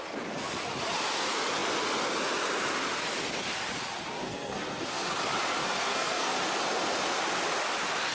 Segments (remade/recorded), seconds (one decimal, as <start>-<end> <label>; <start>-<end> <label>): 0.0-4.2 recorded; 4.2-5.1 remade; 5.1-5.6 recorded; 5.6-6.3 remade; 6.3-8.1 recorded

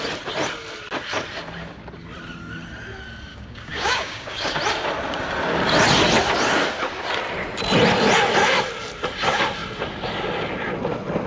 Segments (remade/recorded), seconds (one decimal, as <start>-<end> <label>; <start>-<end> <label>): 0.0-3.3 recorded; 3.3-4.6 remade; 4.6-11.3 recorded

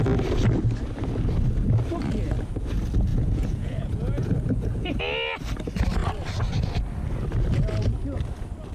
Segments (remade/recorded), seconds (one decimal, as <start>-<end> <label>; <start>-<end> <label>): 0.0-3.1 recorded; 3.1-5.0 remade; 5.0-8.7 recorded

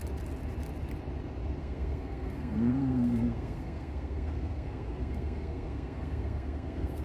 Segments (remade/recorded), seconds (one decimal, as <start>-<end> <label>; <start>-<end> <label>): 0.0-1.6 recorded; 1.6-7.0 remade